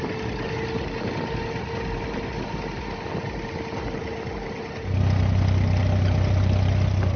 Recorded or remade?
recorded